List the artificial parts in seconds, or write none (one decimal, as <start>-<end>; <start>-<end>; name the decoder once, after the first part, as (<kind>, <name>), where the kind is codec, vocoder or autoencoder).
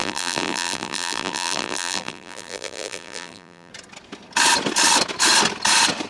0.0-3.7 (vocoder, BigVGAN v2)